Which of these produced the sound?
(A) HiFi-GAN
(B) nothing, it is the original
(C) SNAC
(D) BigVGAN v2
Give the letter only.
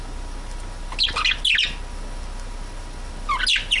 B